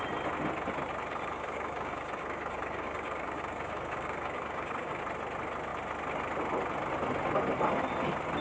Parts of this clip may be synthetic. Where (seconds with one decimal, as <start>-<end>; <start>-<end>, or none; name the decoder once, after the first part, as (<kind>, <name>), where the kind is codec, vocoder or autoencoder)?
1.1-5.0 (codec, DAC)